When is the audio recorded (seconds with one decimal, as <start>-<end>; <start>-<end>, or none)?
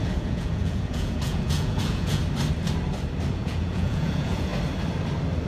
2.2-3.3; 4.5-5.5